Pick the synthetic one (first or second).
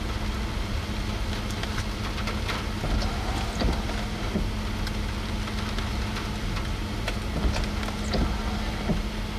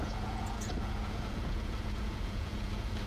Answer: second